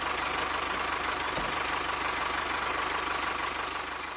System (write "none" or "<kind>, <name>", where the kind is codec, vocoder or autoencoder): none